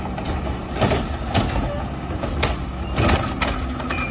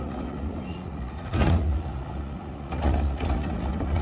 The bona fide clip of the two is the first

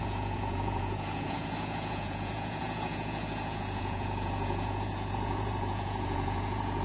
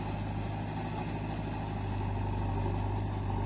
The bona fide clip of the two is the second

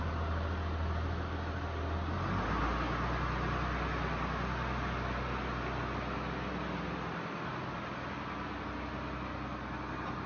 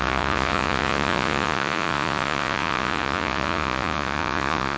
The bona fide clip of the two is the first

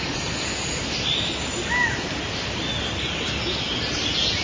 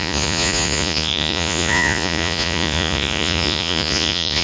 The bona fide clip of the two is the first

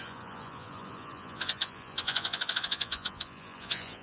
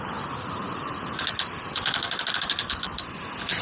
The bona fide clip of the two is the second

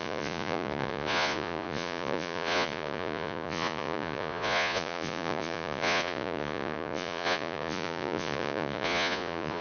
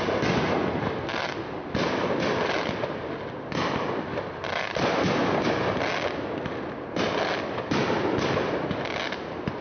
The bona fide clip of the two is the second